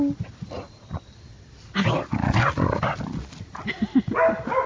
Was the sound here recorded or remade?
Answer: recorded